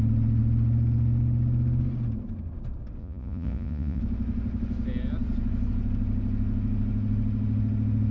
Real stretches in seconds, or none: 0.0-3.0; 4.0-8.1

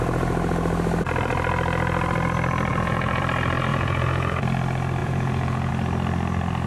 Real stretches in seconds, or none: 0.0-2.7; 3.2-3.7; 4.4-5.0; 5.7-6.7

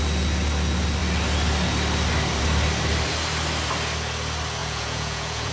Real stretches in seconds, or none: 0.0-4.6

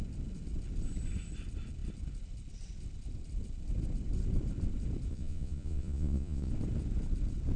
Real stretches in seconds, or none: 0.0-5.1; 6.5-7.6

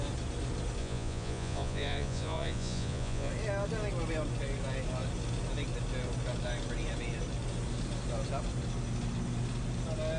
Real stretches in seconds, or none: 0.0-0.8; 3.3-10.2

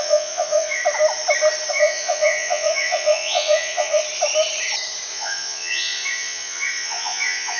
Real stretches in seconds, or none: 0.8-1.7; 4.0-5.1

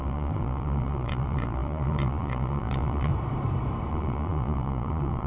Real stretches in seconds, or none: 3.1-3.9